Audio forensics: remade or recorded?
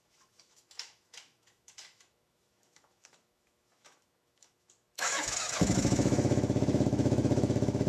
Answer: remade